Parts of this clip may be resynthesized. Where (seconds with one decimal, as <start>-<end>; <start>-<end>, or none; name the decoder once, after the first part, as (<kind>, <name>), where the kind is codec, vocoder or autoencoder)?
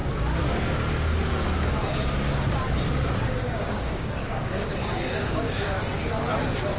3.4-5.8 (codec, DAC)